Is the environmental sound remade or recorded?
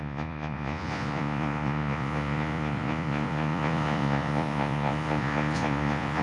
remade